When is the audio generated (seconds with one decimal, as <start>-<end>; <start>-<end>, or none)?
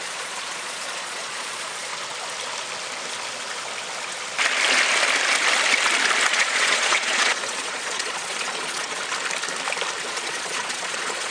0.0-1.9; 6.3-9.0; 10.0-11.3